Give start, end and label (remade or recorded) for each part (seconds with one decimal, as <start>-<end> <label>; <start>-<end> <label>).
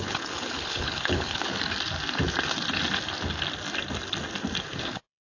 0.0-1.5 remade; 1.5-4.6 recorded; 4.6-5.2 remade